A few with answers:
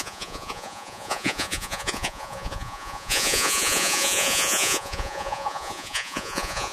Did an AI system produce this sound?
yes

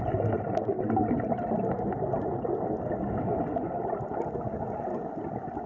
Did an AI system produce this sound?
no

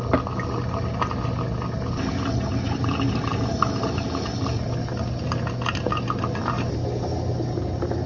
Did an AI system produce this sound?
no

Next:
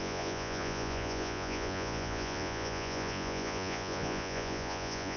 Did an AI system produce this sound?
yes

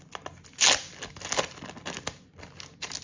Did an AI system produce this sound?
no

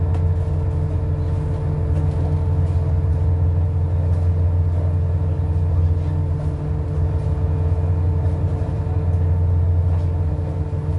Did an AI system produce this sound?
no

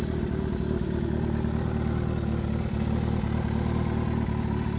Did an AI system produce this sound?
no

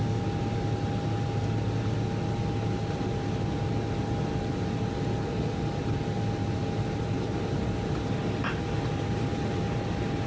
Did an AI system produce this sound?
no